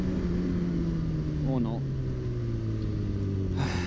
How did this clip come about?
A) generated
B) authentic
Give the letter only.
B